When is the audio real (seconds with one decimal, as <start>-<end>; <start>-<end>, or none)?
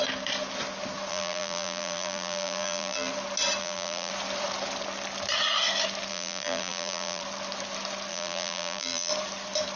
0.0-1.1; 3.1-3.6; 4.1-6.1; 7.2-8.1; 9.1-9.8